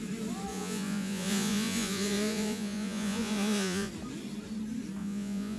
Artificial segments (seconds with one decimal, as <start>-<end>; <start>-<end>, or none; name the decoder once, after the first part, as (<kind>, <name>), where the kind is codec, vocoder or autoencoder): 0.5-3.9 (vocoder, Vocos); 5.0-5.6